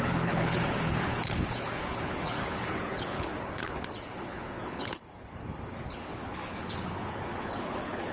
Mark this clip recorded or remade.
remade